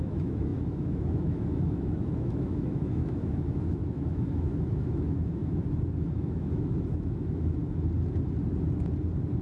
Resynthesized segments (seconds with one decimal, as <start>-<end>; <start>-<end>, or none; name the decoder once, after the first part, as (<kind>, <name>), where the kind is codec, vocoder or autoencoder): 0.0-7.6 (autoencoder, DAC-VAE)